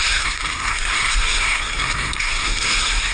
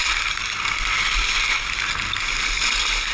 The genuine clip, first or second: second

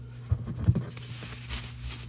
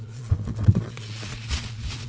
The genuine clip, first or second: first